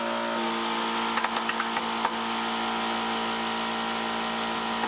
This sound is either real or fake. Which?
real